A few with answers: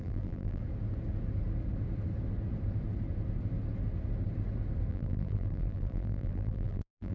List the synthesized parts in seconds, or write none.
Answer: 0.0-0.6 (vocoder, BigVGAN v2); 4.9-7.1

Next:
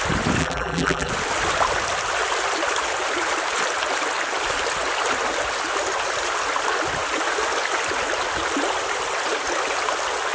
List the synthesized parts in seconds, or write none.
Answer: 0.4-1.1 (vocoder, BigVGAN v2)

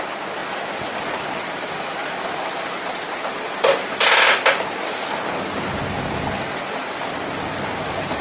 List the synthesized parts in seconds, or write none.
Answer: none

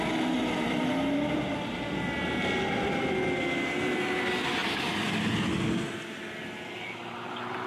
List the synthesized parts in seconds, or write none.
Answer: 0.4-0.9 (vocoder, BigVGAN v2); 4.6-5.1

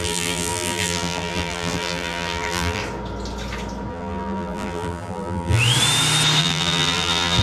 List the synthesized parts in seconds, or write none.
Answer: 0.0-2.8 (vocoder, BigVGAN v2); 3.9-5.6; 6.4-7.4